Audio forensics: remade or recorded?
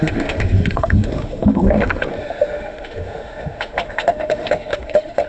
remade